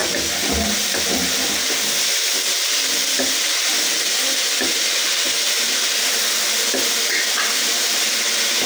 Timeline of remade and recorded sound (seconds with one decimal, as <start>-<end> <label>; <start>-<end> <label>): 0.0-8.7 recorded